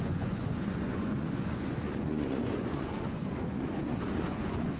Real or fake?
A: fake